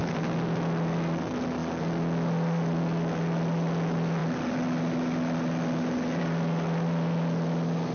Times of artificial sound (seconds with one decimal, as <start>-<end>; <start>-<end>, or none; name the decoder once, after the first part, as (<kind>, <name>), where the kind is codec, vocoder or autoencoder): none